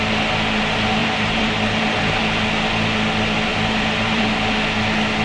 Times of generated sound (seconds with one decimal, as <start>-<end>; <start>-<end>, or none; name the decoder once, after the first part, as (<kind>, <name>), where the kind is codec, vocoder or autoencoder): 1.0-2.2 (vocoder, BigVGAN v2); 3.5-4.2